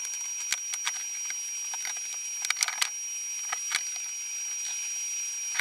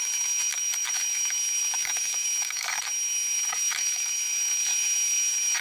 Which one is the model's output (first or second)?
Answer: second